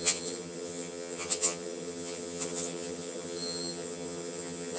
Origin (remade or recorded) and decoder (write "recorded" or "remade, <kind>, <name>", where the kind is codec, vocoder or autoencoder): remade, vocoder, HiFi-GAN